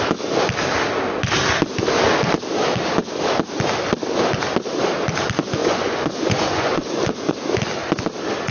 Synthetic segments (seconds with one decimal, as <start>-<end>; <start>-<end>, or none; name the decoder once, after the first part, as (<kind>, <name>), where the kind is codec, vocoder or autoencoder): 5.6-7.3 (vocoder, Vocos)

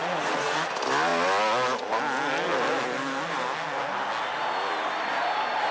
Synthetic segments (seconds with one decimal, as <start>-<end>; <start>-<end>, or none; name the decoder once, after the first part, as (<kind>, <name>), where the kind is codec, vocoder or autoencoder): 0.0-0.7 (vocoder, Vocos)

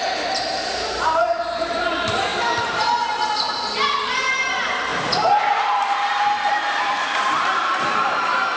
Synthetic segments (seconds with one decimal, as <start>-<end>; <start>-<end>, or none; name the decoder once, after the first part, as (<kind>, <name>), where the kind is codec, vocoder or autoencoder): 0.0-8.6 (vocoder, BigVGAN v2)

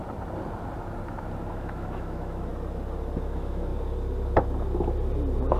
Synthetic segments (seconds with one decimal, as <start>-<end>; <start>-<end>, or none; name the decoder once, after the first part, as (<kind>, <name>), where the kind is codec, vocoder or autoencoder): 1.5-2.5 (autoencoder, DAC-VAE); 3.2-3.7

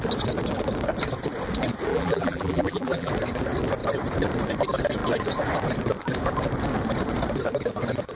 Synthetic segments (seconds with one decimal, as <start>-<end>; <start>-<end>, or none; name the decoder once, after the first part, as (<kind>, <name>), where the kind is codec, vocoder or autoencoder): 1.9-3.1 (vocoder, BigVGAN v2)

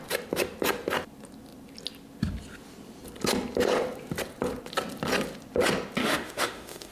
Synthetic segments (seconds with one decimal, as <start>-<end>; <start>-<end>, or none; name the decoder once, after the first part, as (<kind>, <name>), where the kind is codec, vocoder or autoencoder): 6.0-6.9 (autoencoder, DAC-VAE)

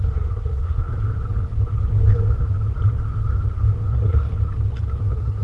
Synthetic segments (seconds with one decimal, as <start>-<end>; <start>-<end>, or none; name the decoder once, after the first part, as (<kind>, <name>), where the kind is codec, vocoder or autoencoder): 0.0-0.9 (codec, SNAC); 3.9-4.3; 5.0-5.4